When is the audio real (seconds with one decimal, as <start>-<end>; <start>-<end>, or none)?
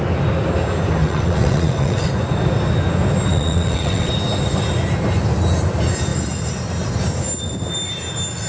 0.0-1.0; 2.1-3.3; 4.1-8.5